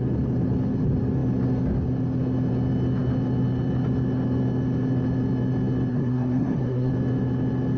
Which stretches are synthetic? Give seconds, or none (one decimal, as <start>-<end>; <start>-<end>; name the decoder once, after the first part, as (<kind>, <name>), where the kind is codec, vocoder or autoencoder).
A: 5.9-6.9 (codec, SNAC)